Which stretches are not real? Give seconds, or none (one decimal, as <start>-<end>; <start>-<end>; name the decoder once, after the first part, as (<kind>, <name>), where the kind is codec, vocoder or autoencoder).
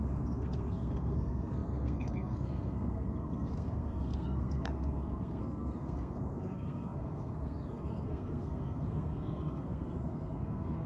0.0-10.9 (codec, SNAC)